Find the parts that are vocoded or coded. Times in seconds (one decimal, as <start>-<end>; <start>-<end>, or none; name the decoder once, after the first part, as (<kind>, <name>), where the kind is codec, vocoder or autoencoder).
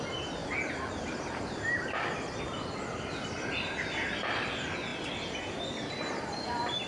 none